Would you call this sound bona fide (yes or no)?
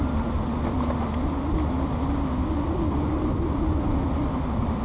yes